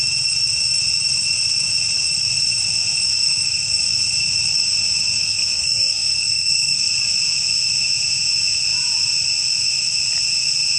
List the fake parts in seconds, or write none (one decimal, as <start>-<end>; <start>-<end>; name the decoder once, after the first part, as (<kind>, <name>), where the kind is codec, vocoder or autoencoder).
3.2-3.8 (codec, SNAC); 5.2-6.9